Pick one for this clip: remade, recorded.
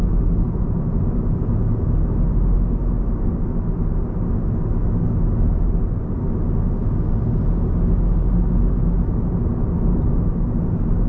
recorded